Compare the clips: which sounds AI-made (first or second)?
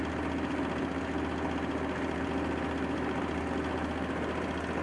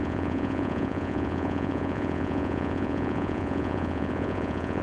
second